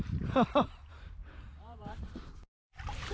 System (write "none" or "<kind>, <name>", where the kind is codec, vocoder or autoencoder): vocoder, BigVGAN v2